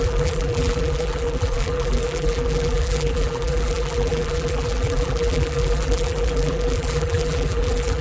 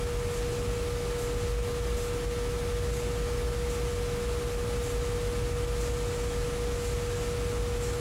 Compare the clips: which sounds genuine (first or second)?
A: second